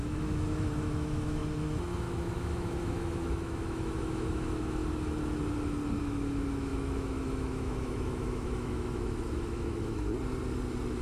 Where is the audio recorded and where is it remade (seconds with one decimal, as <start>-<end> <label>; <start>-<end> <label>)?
0.0-4.8 remade; 4.8-6.0 recorded; 6.0-10.1 remade; 10.1-11.0 recorded